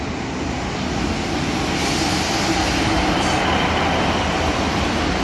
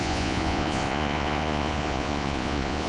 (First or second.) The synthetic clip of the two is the second